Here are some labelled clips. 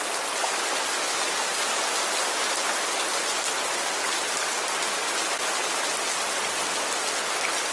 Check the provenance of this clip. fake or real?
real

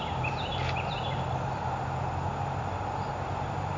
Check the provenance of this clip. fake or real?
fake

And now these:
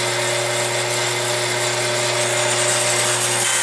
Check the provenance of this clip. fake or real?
real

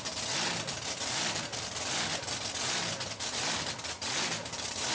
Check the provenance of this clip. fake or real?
real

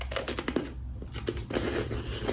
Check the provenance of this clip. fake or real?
real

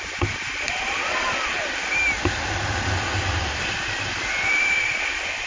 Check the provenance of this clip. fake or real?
real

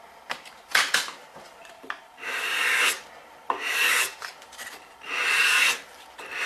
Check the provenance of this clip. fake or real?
real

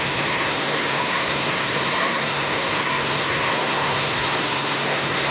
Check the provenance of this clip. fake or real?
fake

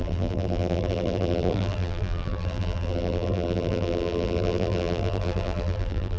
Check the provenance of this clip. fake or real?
fake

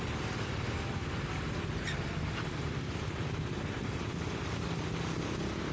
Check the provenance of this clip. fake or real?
real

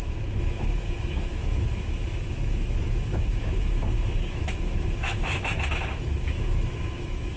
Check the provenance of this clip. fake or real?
fake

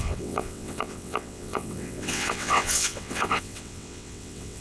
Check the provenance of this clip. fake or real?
fake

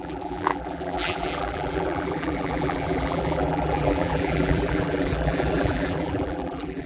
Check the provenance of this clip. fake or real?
fake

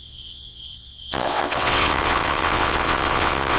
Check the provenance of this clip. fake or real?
fake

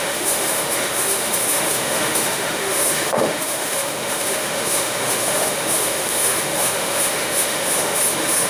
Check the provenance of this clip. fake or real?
fake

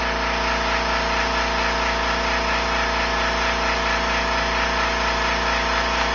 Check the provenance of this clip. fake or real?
real